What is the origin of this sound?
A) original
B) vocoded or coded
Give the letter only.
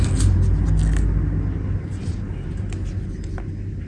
A